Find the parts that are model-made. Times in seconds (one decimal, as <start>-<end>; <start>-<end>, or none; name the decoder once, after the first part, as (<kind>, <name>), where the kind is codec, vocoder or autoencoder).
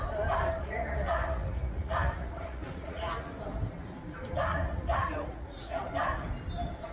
0.6-3.3 (vocoder, Vocos); 4.5-5.9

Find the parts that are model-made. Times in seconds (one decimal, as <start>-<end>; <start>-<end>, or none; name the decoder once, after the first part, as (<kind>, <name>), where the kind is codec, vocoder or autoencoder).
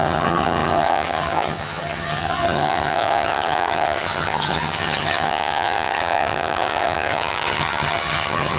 0.0-8.6 (vocoder, HiFi-GAN)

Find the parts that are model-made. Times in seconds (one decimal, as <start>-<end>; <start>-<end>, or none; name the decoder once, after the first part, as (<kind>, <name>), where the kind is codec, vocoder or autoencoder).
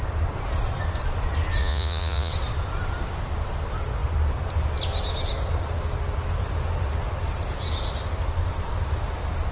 1.6-2.3 (vocoder, Vocos)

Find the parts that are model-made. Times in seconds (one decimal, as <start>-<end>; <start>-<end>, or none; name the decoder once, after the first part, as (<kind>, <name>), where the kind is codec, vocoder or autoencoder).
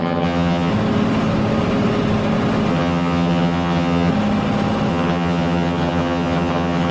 0.0-0.7 (vocoder, HiFi-GAN); 2.7-4.1; 4.9-6.9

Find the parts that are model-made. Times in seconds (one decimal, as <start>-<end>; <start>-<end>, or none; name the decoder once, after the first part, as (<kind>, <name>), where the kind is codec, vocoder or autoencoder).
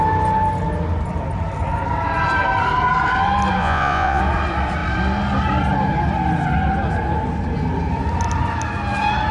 3.6-4.2 (vocoder, Vocos)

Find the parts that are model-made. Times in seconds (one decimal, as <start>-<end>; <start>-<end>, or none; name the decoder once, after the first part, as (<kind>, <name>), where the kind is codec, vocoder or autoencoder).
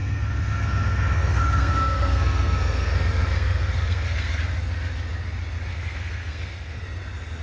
0.0-4.4 (codec, SNAC); 5.7-6.8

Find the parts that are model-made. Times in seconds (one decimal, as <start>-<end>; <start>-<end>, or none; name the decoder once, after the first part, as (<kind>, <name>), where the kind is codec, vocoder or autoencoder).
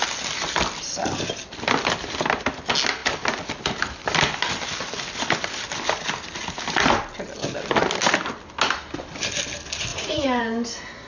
9.9-10.4 (vocoder, Vocos)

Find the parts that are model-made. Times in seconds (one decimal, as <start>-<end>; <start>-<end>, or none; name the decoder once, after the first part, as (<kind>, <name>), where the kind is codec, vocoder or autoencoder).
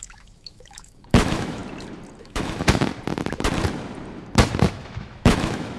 0.0-1.6 (autoencoder, DAC-VAE); 2.2-2.9; 4.7-5.8